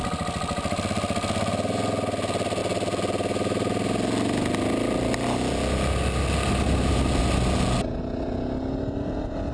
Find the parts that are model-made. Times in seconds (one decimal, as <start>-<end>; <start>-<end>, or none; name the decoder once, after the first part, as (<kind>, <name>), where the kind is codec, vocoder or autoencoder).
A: none